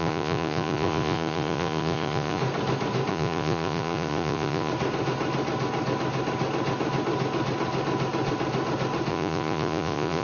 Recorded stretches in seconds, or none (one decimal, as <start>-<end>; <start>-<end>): 2.4-3.1; 4.7-9.1